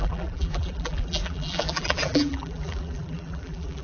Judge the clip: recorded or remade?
remade